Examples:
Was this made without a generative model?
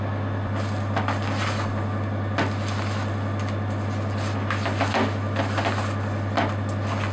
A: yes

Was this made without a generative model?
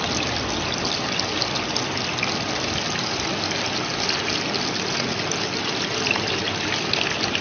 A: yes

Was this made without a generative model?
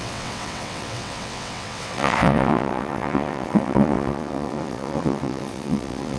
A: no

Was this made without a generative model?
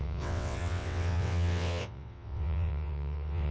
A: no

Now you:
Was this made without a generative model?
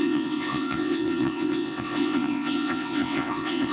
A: no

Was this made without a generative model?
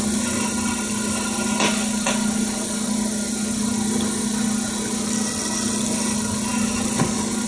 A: yes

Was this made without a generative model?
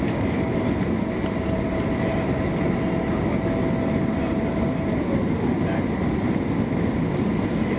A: yes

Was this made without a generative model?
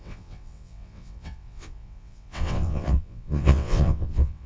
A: no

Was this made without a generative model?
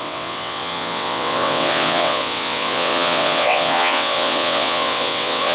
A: no